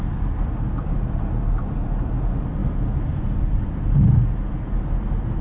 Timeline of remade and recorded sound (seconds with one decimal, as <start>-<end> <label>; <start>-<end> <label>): 0.0-5.4 recorded